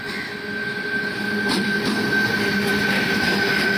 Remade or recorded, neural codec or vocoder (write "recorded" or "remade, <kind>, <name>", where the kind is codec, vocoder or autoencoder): recorded